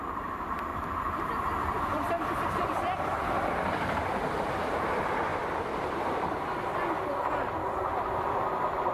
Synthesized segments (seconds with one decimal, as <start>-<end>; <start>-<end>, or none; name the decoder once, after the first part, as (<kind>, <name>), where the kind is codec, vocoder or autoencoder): 0.7-3.1 (vocoder, BigVGAN v2); 5.3-7.5